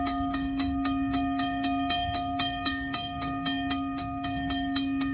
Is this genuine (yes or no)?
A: no